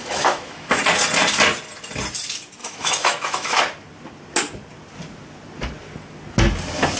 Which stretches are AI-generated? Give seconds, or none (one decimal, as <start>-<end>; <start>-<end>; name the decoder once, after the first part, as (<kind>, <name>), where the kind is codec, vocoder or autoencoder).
0.0-0.8 (autoencoder, DAC-VAE); 2.6-3.6